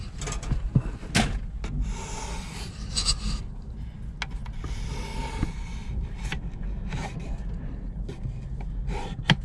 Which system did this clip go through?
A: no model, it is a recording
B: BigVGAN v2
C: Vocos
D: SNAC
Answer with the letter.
A